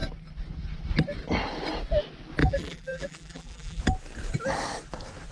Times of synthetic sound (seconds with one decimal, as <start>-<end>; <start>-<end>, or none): 2.4-3.8